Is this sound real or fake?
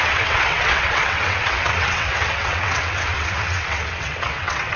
fake